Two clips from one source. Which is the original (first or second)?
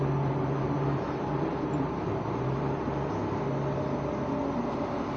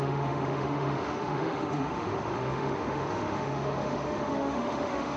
first